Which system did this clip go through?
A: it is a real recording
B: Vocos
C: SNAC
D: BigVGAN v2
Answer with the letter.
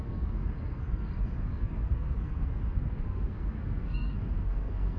C